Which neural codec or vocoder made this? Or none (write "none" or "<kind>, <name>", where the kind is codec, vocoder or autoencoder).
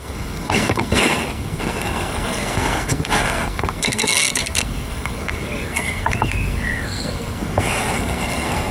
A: codec, SNAC